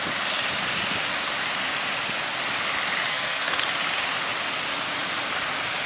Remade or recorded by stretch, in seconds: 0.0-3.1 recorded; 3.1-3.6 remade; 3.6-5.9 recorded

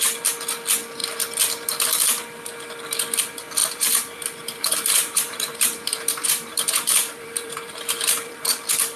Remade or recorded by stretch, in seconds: 0.0-3.6 recorded; 3.6-8.3 remade; 8.3-9.0 recorded

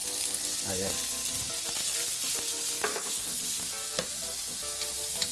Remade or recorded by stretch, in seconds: 0.0-2.9 recorded; 2.9-3.4 remade; 3.4-5.3 recorded

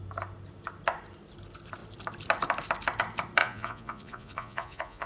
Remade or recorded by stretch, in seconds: 0.0-3.4 recorded; 3.4-5.1 remade

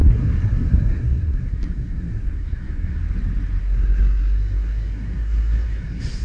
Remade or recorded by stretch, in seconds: 0.0-3.0 remade; 3.0-3.6 recorded; 3.6-6.2 remade

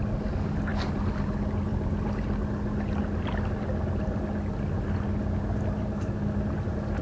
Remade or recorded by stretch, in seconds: 0.0-7.0 recorded

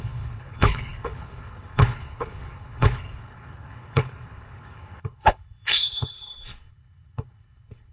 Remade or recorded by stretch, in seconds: 0.0-7.9 remade